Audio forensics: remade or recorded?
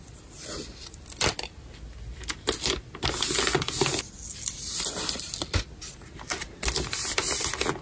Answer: recorded